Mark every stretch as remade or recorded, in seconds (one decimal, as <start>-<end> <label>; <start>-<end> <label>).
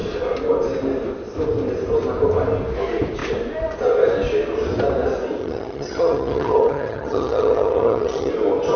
0.0-5.4 recorded; 5.4-8.3 remade; 8.3-8.8 recorded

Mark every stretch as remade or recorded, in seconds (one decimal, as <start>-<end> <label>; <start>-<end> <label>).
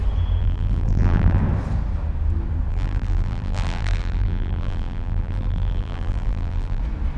0.0-0.4 recorded; 0.4-1.4 remade; 1.4-2.7 recorded; 2.7-6.8 remade; 6.8-7.2 recorded